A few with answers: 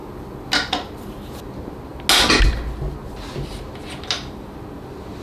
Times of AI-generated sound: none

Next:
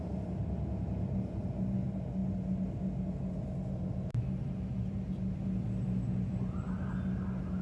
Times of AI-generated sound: none

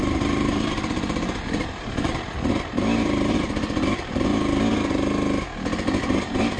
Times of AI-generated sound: 0.0-4.3 (vocoder, BigVGAN v2); 6.0-6.6

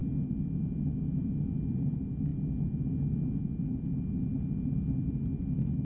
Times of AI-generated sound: none

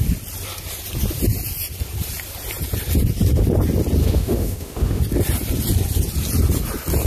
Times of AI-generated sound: 4.0-5.0 (autoencoder, DAC-VAE)